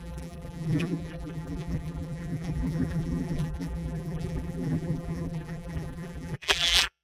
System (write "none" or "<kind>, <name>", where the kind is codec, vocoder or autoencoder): vocoder, BigVGAN v2